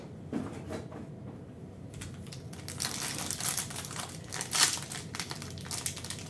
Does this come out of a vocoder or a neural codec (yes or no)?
no